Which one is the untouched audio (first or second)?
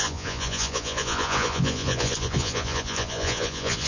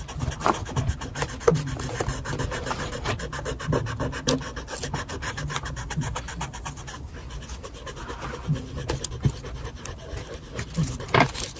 second